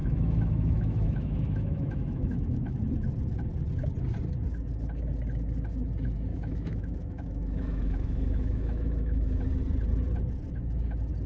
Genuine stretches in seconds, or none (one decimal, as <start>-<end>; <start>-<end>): 2.8-6.3; 9.4-11.3